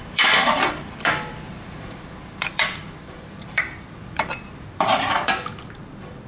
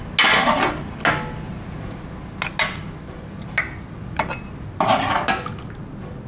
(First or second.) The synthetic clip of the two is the first